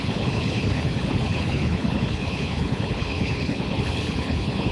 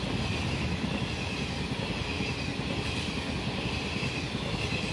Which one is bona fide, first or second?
second